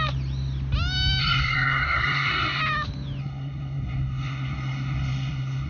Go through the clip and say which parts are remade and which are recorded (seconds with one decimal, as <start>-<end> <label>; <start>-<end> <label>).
0.0-1.2 recorded; 1.2-2.6 remade; 2.6-3.2 recorded; 3.2-5.7 remade